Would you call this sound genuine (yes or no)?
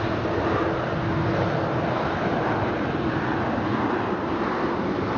yes